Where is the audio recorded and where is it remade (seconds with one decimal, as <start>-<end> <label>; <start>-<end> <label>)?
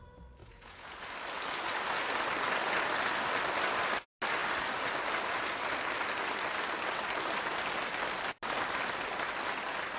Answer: 0.0-0.4 recorded; 0.4-1.1 remade; 1.1-10.0 recorded